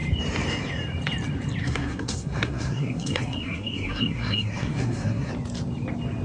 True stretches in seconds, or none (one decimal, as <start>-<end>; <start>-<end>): 0.0-1.6; 5.3-6.2